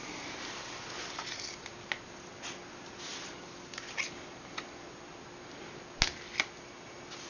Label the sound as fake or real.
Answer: real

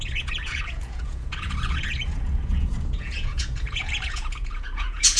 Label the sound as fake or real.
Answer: fake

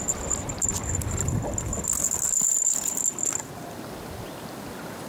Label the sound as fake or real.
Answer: real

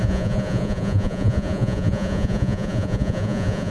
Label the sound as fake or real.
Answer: fake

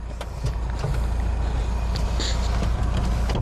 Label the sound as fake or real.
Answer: real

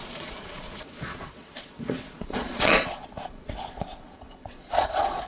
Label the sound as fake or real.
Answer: fake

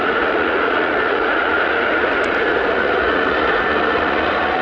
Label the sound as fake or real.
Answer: fake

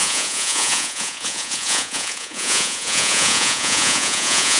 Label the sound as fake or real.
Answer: fake